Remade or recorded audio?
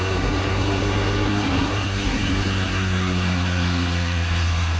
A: remade